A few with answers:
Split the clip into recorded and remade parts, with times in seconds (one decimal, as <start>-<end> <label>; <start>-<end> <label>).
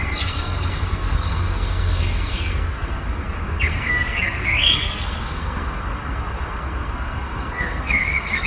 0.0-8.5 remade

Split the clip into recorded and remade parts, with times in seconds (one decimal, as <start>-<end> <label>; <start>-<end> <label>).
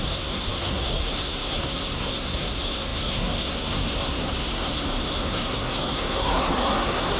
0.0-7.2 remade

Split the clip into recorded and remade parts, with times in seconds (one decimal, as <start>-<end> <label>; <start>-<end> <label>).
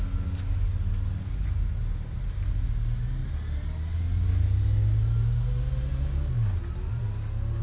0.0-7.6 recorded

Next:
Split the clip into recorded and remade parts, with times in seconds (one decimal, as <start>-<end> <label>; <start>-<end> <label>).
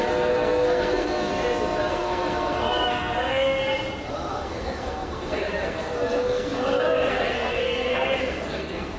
0.0-1.3 remade; 1.3-1.9 recorded; 1.9-3.6 remade; 3.6-4.3 recorded; 4.3-9.0 remade